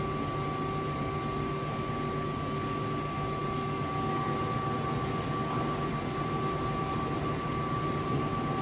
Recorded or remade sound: recorded